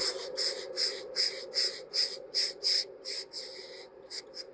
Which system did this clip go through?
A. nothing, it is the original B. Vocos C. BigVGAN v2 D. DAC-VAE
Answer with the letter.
A